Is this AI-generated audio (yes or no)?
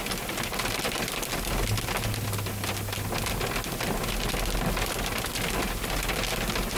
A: no